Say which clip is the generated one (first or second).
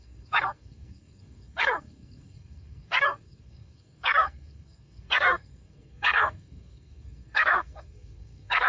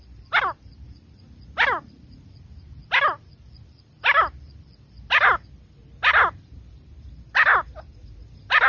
first